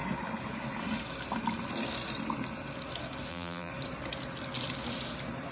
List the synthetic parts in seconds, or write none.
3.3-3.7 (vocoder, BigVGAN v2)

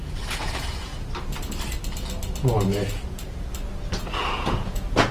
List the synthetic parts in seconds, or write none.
0.0-0.9 (vocoder, Vocos); 4.0-5.1

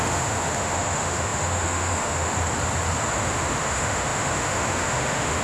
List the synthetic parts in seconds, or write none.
0.0-2.3 (autoencoder, DAC-VAE); 3.0-5.4

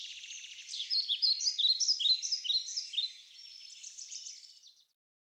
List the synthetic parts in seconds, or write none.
0.6-2.0 (vocoder, BigVGAN v2); 2.7-4.3

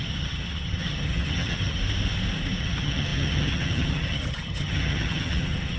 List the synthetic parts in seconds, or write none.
0.0-1.8 (vocoder, HiFi-GAN); 2.6-5.8

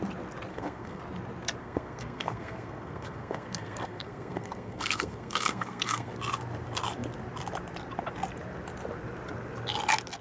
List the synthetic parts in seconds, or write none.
0.5-1.0 (codec, SNAC); 1.6-6.1

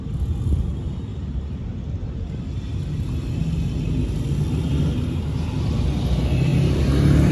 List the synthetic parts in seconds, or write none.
none

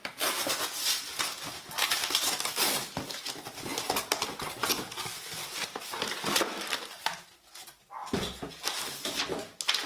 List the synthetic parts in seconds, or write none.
none